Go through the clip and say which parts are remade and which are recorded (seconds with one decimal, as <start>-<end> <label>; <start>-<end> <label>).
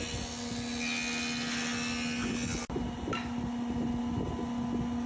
0.0-5.1 recorded